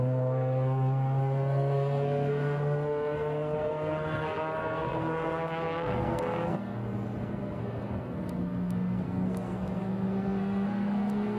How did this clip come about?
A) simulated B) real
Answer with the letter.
A